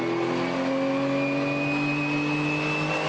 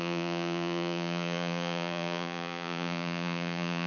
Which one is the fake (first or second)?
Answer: second